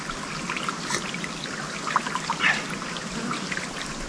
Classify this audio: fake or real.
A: real